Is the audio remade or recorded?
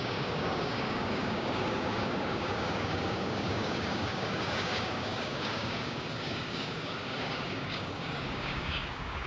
remade